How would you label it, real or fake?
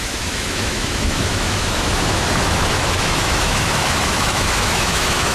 fake